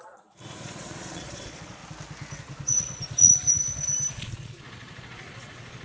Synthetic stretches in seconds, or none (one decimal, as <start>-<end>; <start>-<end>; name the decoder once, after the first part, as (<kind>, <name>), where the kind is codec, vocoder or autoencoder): 0.0-1.8 (vocoder, Vocos); 2.4-3.3; 4.1-5.8